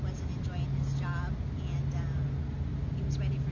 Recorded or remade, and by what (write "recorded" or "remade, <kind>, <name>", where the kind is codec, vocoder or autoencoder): recorded